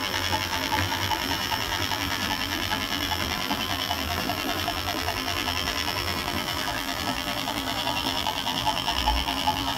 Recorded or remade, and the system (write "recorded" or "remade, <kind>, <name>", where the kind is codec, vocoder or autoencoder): remade, vocoder, BigVGAN v2